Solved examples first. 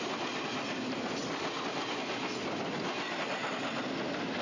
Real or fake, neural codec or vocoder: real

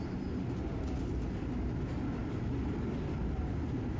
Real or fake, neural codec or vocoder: real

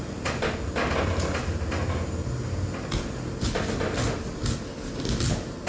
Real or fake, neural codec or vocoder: real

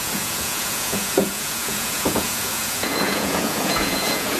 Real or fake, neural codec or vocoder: fake, vocoder, Vocos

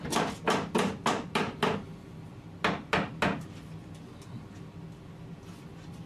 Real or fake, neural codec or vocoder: real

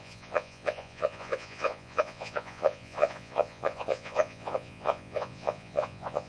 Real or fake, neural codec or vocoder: fake, vocoder, Vocos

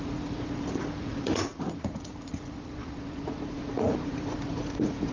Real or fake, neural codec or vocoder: fake, vocoder, Vocos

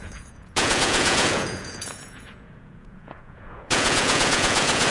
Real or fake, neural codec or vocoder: fake, vocoder, Vocos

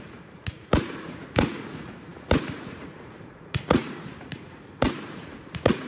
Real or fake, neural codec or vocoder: fake, vocoder, Vocos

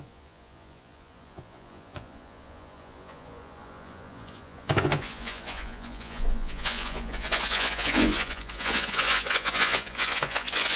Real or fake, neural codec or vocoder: fake, vocoder, Vocos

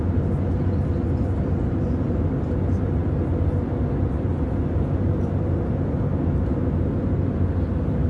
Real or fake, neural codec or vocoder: real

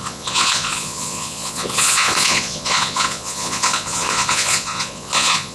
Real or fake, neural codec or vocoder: fake, vocoder, Vocos